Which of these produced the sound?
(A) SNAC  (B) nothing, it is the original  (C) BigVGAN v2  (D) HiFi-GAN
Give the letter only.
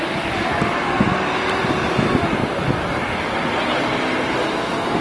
B